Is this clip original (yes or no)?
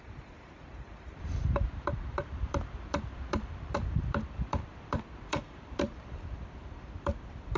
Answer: no